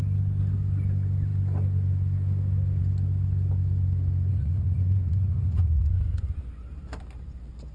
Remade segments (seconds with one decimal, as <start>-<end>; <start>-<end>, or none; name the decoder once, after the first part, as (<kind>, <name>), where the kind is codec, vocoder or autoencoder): 4.3-6.2 (vocoder, Vocos)